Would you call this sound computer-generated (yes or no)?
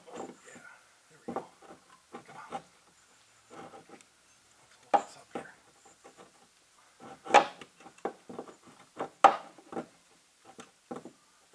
no